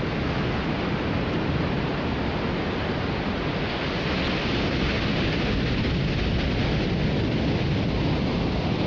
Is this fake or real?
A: real